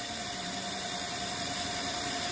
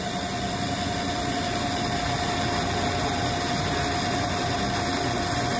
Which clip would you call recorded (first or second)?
second